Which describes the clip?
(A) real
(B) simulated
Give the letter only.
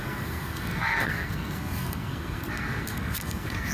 B